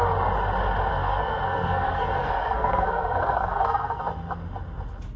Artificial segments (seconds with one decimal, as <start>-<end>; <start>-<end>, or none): 0.9-4.0